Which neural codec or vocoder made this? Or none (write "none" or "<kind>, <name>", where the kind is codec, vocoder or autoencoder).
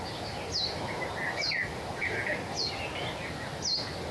none